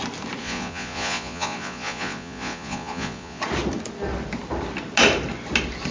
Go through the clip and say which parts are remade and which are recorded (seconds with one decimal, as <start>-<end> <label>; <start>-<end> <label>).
0.0-0.4 recorded; 0.4-3.4 remade; 3.4-5.9 recorded